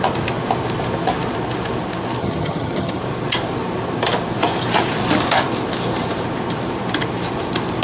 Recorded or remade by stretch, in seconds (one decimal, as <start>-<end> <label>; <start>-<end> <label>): 0.0-2.2 recorded; 2.2-3.0 remade; 3.0-7.8 recorded